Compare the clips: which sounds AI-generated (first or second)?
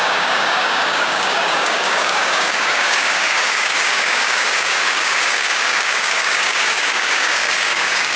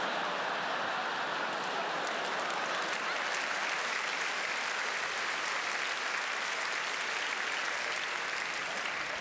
first